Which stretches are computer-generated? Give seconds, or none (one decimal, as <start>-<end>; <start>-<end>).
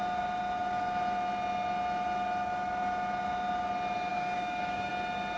4.1-4.9